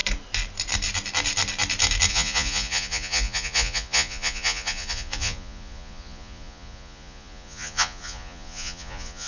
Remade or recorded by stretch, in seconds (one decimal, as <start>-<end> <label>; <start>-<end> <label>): 0.0-2.1 recorded; 2.1-9.3 remade